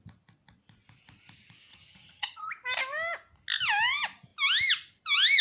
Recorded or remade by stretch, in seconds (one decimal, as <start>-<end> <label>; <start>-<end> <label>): 0.0-1.7 recorded; 1.7-2.4 remade; 2.4-5.4 recorded